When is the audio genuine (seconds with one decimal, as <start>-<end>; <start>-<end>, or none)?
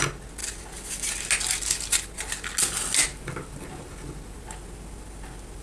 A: 0.0-5.6